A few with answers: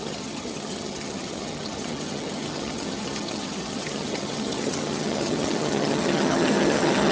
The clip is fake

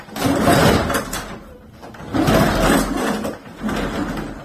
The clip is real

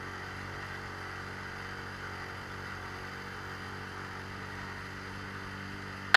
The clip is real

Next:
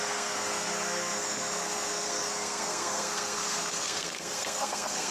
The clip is fake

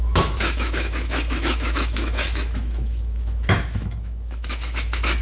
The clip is fake